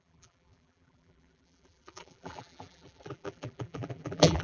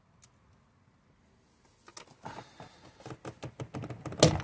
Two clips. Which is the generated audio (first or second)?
first